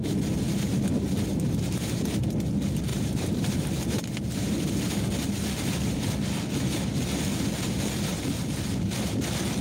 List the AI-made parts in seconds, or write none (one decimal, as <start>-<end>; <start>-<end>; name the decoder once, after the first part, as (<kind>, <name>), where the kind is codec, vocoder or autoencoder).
1.3-2.0 (vocoder, BigVGAN v2); 2.9-3.9